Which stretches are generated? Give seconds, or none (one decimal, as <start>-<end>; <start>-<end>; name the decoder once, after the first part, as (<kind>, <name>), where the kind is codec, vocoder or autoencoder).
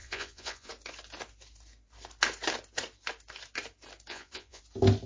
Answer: 0.0-0.7 (vocoder, Vocos); 4.1-4.6